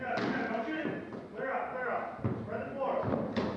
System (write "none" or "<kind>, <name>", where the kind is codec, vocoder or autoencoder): none